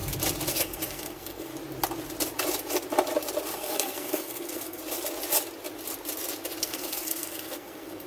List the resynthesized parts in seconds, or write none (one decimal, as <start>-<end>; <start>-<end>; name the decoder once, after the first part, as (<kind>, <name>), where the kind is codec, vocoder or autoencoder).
0.5-1.5 (codec, SNAC); 3.5-4.8; 6.6-8.1